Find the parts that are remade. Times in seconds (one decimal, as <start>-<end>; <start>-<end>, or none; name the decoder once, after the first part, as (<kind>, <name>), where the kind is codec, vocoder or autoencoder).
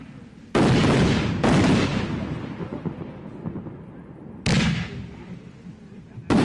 none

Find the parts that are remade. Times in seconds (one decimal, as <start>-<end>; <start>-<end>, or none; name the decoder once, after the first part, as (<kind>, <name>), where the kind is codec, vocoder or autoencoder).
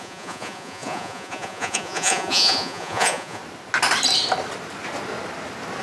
0.0-3.4 (vocoder, Vocos)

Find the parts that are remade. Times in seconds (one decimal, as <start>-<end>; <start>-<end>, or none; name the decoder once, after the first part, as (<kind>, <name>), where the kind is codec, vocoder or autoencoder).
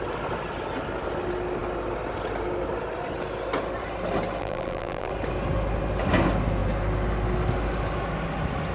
4.4-5.1 (vocoder, BigVGAN v2)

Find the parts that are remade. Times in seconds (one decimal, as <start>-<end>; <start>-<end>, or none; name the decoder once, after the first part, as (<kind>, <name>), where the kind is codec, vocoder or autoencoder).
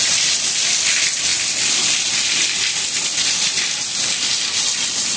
none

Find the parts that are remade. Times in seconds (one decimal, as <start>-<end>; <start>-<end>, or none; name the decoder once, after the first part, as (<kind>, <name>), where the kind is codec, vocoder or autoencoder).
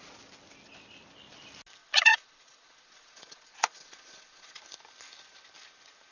1.8-4.6 (vocoder, Vocos)